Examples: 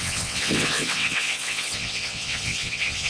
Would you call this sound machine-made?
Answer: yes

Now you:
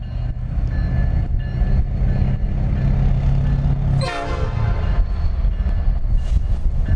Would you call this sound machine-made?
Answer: no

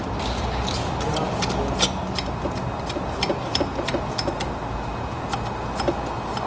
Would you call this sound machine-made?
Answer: no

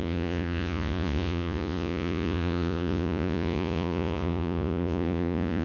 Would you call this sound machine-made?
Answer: yes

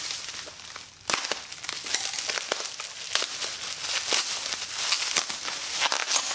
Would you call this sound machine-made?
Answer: no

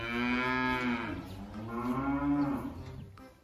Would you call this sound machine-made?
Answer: no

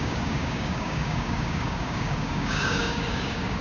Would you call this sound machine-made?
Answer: yes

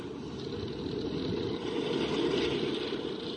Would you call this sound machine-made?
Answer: no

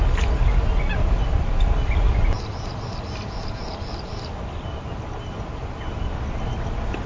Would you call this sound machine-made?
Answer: no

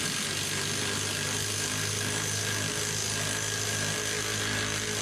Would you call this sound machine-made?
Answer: no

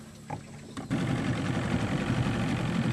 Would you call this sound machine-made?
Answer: no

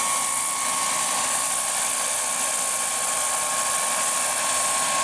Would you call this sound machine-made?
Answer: no